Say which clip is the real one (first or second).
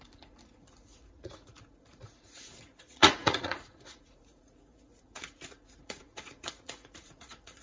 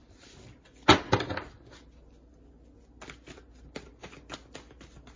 second